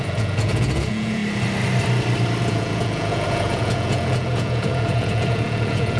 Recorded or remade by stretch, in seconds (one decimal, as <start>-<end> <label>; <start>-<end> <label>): 0.0-1.2 remade; 1.2-2.4 recorded; 2.4-6.0 remade